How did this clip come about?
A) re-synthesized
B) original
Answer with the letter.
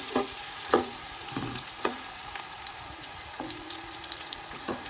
A